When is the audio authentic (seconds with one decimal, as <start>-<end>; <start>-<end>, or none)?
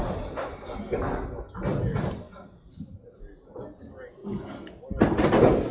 0.0-5.7